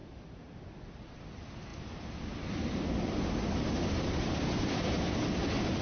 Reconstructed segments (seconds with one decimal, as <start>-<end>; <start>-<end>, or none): 0.0-5.8